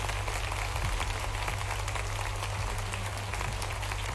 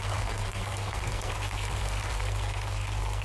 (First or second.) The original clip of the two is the first